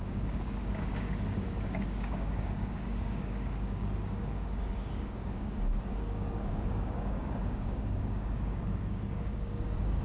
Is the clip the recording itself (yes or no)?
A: no